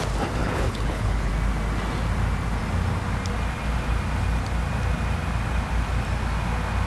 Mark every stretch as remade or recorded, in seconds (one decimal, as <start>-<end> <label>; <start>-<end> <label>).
0.0-0.4 recorded; 0.4-1.3 remade; 1.3-6.9 recorded

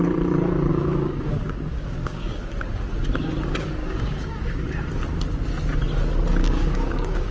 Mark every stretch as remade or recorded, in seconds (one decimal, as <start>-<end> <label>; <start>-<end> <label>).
0.0-0.7 recorded; 0.7-2.5 remade; 2.5-3.8 recorded; 3.8-4.8 remade; 4.8-6.4 recorded; 6.4-7.3 remade

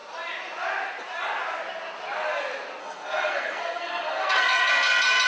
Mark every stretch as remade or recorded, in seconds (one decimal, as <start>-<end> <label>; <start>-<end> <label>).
0.0-2.8 recorded; 2.8-4.7 remade; 4.7-5.3 recorded